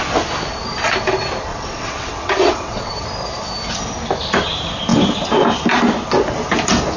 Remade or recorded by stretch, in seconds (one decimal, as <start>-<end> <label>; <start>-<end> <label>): 0.0-1.5 recorded; 1.5-2.9 remade; 2.9-7.0 recorded